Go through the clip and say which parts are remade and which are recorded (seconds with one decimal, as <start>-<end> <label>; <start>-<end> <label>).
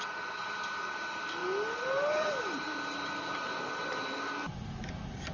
0.0-5.3 recorded